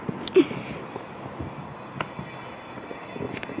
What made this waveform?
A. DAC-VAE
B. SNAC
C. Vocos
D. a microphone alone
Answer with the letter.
D